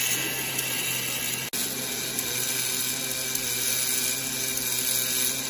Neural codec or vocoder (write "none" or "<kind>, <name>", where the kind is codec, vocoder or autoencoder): none